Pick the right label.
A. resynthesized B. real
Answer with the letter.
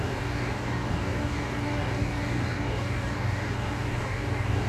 A